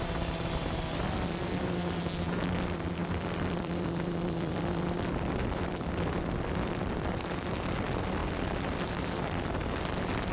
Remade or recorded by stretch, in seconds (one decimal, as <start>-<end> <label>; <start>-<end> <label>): 0.0-3.0 recorded; 3.0-7.2 remade; 7.2-8.2 recorded; 8.2-9.4 remade; 9.4-10.3 recorded